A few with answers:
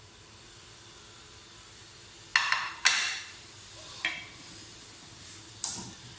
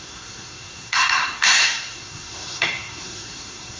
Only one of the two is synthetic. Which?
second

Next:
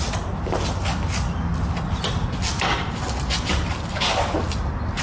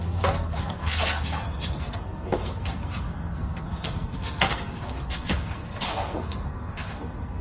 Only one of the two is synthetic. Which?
second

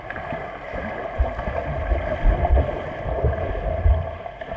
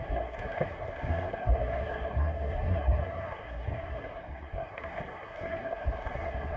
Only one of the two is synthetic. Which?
second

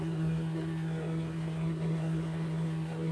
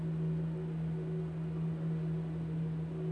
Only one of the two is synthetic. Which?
first